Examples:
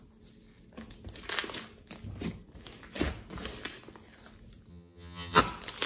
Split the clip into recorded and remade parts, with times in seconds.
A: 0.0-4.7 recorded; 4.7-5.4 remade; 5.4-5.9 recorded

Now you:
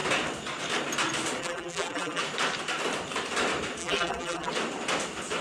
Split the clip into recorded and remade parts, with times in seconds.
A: 0.0-1.4 recorded; 1.4-2.2 remade; 2.2-3.8 recorded; 3.8-4.5 remade; 4.5-5.4 recorded